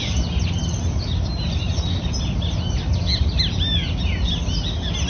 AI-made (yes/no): no